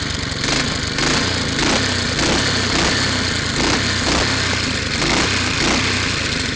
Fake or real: real